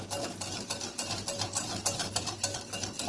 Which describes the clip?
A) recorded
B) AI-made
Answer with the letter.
A